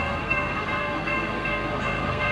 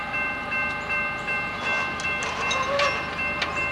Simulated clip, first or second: first